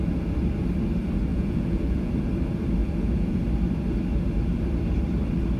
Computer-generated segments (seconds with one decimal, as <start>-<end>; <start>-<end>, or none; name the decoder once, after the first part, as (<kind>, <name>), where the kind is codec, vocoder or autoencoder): 1.3-2.1 (vocoder, Vocos); 2.8-3.4

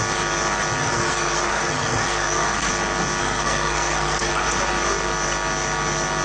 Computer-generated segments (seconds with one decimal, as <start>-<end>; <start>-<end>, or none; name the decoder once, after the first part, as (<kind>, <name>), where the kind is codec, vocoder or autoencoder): 0.8-2.7 (codec, SNAC); 3.2-4.3

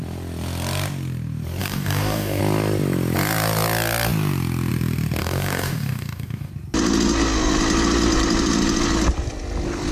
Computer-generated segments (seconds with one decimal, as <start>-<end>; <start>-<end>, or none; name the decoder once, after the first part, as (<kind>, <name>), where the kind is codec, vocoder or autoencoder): 1.6-2.4 (codec, DAC); 5.2-6.5

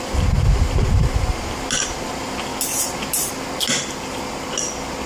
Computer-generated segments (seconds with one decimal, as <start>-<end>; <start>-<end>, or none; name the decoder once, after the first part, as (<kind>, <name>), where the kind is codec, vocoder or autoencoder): none

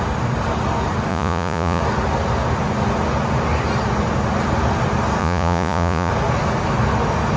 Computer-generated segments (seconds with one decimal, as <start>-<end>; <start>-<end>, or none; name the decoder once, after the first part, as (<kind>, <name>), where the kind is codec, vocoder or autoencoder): 1.1-1.8 (vocoder, Vocos); 5.2-6.1

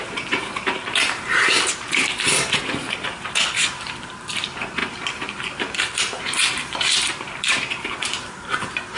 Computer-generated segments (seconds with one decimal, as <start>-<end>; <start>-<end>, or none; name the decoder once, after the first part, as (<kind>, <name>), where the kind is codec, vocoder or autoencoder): 0.0-9.0 (vocoder, BigVGAN v2)